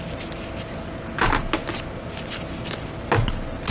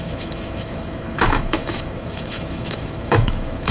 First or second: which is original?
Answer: first